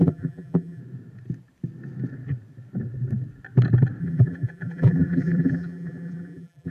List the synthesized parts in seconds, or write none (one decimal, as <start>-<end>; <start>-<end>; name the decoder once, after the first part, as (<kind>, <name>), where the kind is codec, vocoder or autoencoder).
0.0-0.8 (vocoder, BigVGAN v2); 4.0-6.7